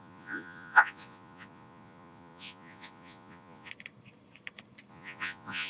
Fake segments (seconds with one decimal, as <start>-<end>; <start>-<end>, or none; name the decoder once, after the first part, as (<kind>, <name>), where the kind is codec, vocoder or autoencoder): 0.0-3.7 (vocoder, Vocos); 4.9-5.7